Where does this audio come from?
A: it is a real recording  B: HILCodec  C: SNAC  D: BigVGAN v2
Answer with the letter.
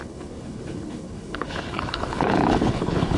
B